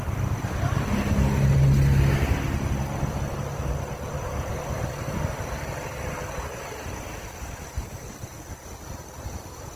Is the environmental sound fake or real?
real